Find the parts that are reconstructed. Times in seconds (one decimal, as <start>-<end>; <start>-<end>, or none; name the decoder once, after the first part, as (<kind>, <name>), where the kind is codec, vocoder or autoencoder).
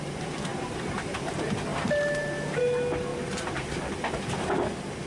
0.5-1.2 (vocoder, BigVGAN v2); 1.7-2.6; 3.1-3.6